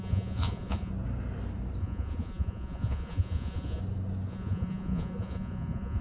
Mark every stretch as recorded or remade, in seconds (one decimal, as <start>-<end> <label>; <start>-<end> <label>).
0.0-0.9 remade; 0.9-1.8 recorded; 1.8-3.8 remade; 3.8-4.3 recorded; 4.3-6.0 remade